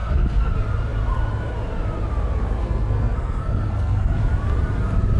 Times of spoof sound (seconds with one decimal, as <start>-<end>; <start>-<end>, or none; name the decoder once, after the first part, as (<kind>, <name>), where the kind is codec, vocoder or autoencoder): 0.0-0.5 (codec, SNAC); 2.6-4.2

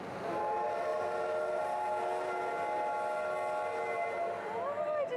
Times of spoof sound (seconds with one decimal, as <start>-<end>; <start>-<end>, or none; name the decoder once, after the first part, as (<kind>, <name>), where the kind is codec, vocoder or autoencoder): 0.9-1.6 (vocoder, BigVGAN v2)

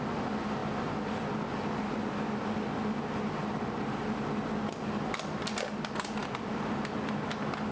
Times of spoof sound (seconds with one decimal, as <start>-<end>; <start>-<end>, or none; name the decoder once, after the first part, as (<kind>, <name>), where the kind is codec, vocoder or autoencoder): none

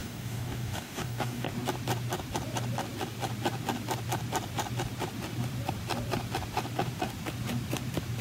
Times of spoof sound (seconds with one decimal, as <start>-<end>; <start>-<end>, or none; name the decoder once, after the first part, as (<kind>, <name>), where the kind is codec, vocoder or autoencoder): 0.0-1.5 (codec, DAC)

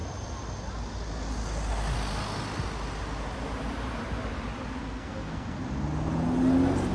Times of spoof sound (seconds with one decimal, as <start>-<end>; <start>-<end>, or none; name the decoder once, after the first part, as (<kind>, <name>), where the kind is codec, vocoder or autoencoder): 4.8-5.6 (codec, SNAC)

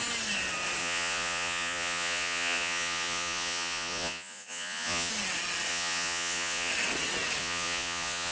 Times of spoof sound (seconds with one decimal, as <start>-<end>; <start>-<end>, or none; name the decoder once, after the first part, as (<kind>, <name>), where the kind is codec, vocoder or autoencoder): 0.8-5.1 (vocoder, Vocos); 5.7-6.7; 7.4-8.3

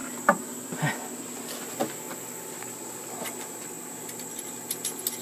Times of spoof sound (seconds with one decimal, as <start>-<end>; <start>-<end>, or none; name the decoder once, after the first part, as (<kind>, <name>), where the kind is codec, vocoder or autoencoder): 0.0-0.6 (vocoder, BigVGAN v2)

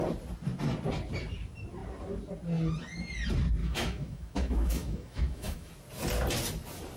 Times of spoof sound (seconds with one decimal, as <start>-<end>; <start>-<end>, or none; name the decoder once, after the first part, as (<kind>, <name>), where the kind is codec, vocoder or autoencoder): 3.6-5.7 (autoencoder, DAC-VAE)